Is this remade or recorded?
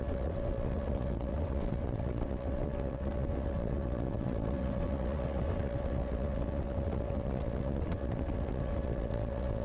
remade